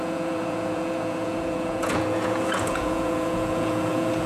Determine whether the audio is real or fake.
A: fake